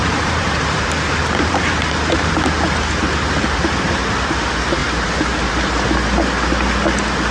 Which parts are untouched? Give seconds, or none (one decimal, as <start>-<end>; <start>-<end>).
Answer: 2.3-4.8; 5.5-7.3